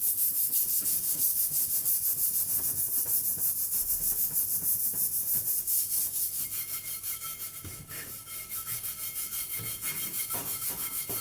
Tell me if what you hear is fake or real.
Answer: fake